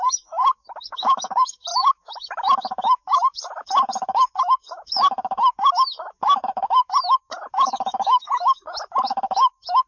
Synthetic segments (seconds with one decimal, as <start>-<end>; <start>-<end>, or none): 0.0-9.9